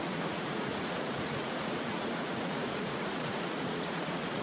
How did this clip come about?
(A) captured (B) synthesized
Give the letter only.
B